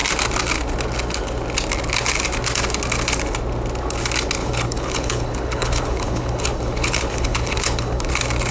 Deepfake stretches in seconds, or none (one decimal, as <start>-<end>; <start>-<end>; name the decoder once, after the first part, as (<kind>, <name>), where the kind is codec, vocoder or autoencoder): 4.4-8.1 (codec, HILCodec)